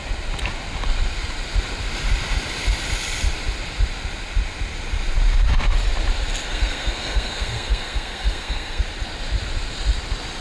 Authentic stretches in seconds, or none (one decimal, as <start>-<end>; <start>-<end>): 0.0-6.5; 8.8-10.4